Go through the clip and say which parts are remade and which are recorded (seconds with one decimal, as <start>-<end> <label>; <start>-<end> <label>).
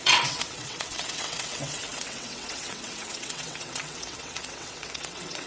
0.0-5.5 remade